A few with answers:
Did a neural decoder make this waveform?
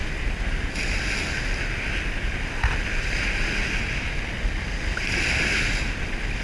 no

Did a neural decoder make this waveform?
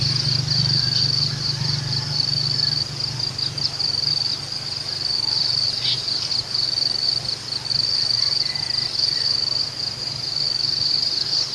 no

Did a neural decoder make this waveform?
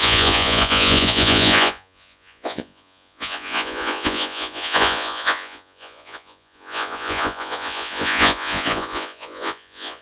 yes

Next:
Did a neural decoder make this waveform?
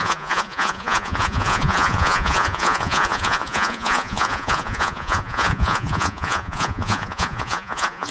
yes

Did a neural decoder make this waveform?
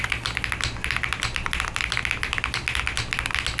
no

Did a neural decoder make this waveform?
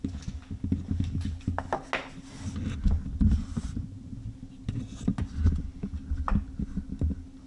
no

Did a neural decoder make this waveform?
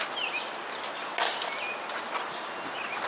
no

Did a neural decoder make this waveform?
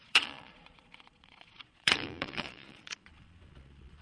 yes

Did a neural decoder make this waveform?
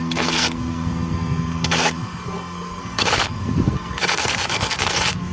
yes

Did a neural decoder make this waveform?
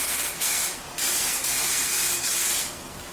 yes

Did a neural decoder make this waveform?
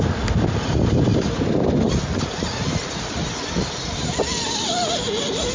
no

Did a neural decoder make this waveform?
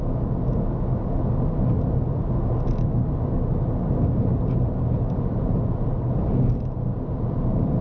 no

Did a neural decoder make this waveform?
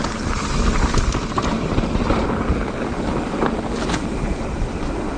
no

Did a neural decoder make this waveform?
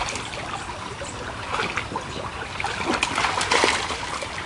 no